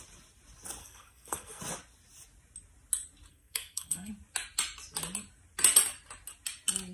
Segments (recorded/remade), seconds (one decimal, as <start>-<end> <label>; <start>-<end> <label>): 0.0-0.8 recorded; 0.8-1.6 remade; 1.6-3.3 recorded; 3.3-4.1 remade; 4.1-6.9 recorded